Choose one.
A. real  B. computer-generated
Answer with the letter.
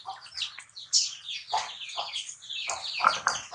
A